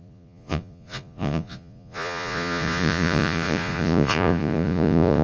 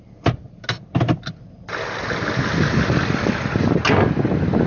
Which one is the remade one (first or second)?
first